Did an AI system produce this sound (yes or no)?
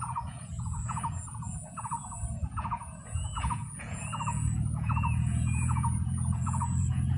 yes